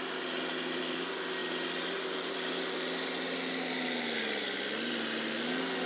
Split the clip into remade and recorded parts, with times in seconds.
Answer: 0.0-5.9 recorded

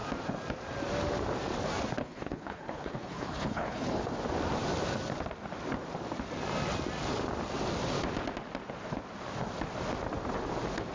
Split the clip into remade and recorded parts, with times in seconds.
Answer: 0.0-2.0 recorded; 2.0-4.0 remade; 4.0-10.9 recorded

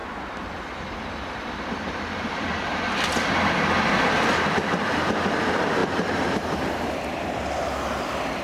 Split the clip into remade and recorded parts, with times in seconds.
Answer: 0.0-3.3 remade; 3.3-5.8 recorded; 5.8-7.2 remade; 7.2-8.4 recorded

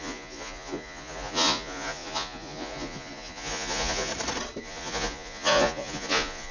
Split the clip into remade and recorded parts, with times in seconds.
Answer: 0.0-4.1 remade; 4.1-4.6 recorded; 4.6-6.5 remade